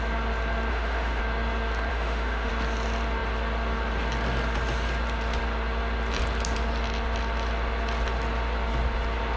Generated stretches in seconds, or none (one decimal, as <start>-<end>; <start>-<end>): 0.7-1.2; 1.9-2.5